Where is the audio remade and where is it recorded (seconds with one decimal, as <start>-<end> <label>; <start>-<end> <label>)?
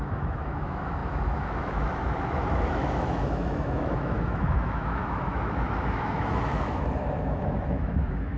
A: 0.0-8.4 remade